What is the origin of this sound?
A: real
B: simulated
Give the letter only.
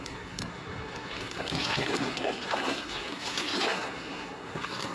B